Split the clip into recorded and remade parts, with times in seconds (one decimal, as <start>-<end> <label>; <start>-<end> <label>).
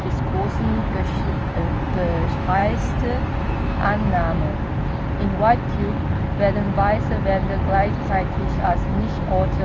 0.0-0.8 remade; 0.8-1.9 recorded; 1.9-2.6 remade; 2.6-3.4 recorded; 3.4-4.5 remade; 4.5-8.1 recorded; 8.1-9.6 remade